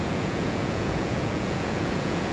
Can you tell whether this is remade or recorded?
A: remade